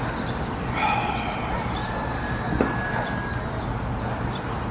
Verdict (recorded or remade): recorded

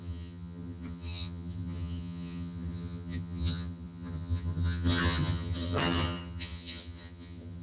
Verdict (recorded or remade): remade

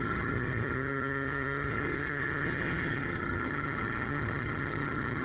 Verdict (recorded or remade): remade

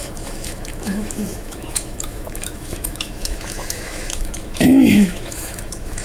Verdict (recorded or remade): remade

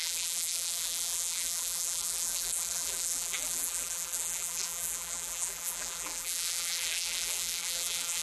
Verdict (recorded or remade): remade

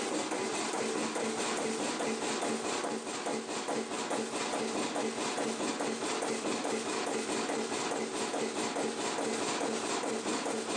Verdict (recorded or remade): recorded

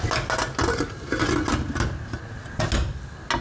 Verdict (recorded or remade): recorded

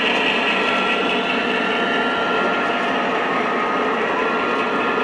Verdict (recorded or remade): recorded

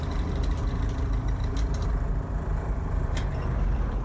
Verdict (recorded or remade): remade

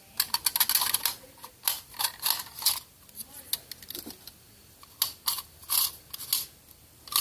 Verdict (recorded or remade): recorded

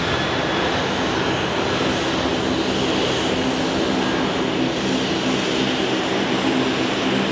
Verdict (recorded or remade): recorded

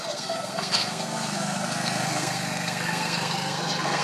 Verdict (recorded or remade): remade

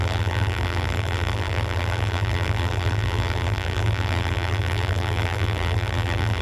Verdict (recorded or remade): remade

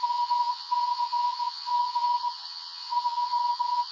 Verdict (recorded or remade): remade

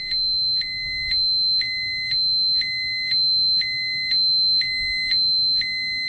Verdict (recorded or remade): recorded